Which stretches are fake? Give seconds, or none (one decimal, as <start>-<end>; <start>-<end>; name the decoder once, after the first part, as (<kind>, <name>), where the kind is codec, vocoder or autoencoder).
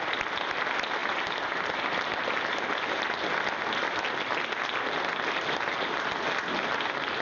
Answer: none